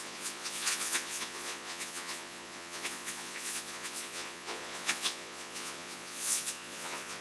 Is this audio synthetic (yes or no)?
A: yes